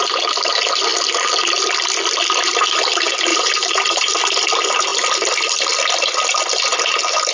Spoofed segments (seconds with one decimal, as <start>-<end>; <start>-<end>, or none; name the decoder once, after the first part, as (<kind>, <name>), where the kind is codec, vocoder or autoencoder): 3.3-4.2 (vocoder, BigVGAN v2)